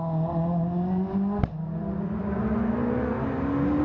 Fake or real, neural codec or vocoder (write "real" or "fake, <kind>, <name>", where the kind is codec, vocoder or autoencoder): real